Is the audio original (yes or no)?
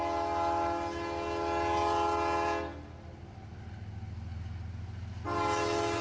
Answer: yes